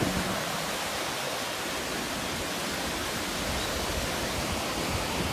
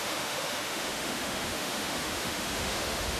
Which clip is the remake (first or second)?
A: second